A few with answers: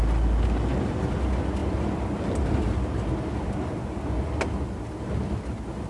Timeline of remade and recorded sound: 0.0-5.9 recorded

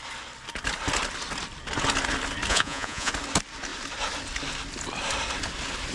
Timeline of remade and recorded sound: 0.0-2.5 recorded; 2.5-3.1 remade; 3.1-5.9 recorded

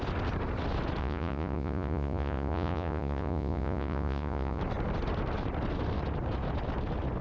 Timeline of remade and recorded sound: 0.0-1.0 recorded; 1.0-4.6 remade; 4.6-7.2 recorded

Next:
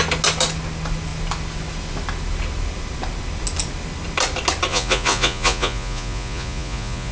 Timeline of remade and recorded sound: 0.0-4.7 recorded; 4.7-7.1 remade